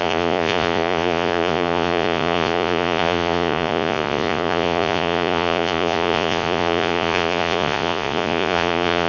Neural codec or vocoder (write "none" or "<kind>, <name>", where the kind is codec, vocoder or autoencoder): vocoder, Vocos